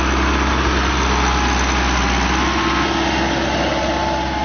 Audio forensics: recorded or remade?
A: recorded